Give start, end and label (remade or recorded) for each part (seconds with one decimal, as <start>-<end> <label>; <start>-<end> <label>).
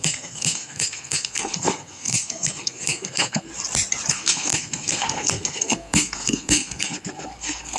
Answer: 0.0-3.5 remade; 3.5-4.1 recorded; 4.1-7.8 remade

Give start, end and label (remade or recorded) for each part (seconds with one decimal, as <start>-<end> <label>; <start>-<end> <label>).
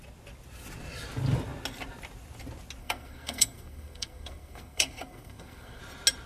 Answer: 0.0-2.8 recorded; 2.8-5.8 remade; 5.8-6.3 recorded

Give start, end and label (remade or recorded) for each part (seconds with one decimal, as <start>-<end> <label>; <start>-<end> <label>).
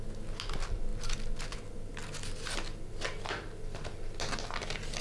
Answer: 0.0-5.0 recorded